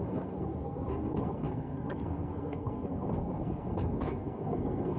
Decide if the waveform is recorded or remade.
remade